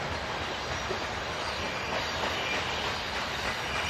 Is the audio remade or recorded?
recorded